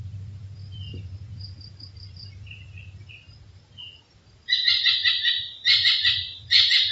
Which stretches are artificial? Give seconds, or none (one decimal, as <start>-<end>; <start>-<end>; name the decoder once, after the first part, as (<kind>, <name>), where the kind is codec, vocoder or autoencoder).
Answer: 0.0-6.9 (vocoder, BigVGAN v2)